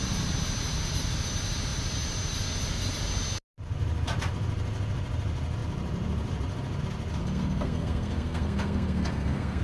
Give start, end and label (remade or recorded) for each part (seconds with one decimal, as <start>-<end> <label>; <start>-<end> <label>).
0.0-7.2 recorded; 7.2-9.6 remade